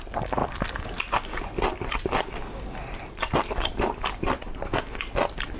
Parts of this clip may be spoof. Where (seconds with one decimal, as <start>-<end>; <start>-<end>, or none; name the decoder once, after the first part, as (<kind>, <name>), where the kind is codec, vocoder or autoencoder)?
none